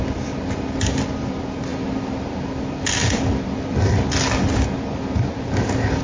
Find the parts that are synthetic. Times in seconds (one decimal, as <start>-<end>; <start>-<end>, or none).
none